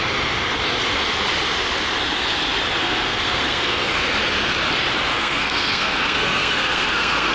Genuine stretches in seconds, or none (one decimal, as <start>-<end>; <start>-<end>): 0.0-2.8; 3.9-5.1